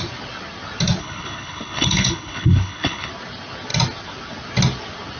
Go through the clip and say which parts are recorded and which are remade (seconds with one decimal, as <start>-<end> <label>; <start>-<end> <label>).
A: 0.0-1.0 recorded; 1.0-3.1 remade; 3.1-5.2 recorded